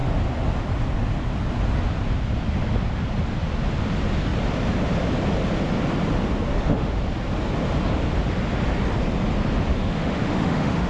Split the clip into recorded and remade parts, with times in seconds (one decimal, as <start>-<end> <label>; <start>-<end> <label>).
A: 0.0-6.5 recorded; 6.5-7.0 remade; 7.0-9.7 recorded; 9.7-10.9 remade